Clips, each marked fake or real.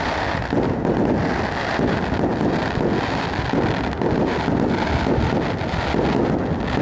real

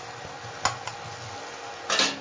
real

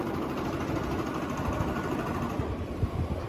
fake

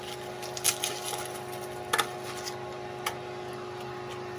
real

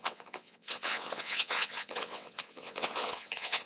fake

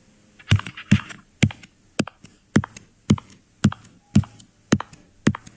real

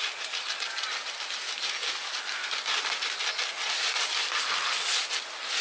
real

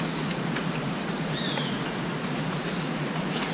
fake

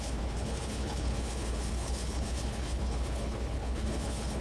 fake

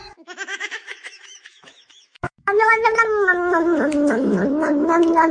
fake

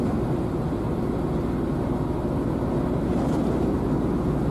real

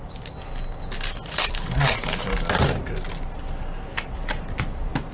real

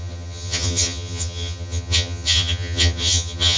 fake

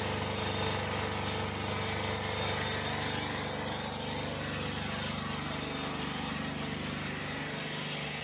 real